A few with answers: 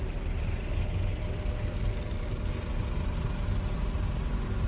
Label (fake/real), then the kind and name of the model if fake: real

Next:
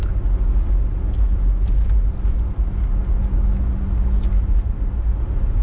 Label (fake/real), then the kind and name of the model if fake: real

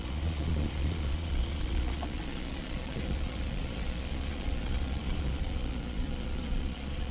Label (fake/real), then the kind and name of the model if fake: fake, vocoder, Vocos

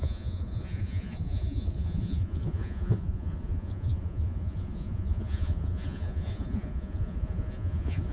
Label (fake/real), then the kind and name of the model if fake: fake, vocoder, Vocos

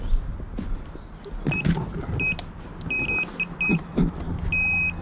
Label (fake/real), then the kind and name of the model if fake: real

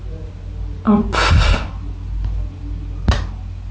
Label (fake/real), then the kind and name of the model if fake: real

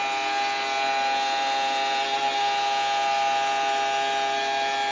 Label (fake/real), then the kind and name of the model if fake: real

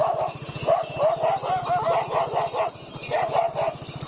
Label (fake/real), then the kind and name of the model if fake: real